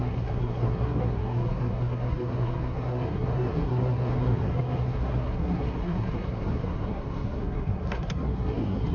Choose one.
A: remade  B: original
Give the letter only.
A